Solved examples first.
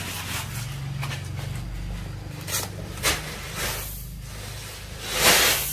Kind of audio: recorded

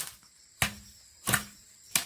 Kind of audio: recorded